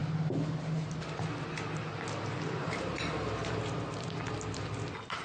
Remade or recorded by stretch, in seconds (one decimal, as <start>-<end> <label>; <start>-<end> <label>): 0.0-5.2 recorded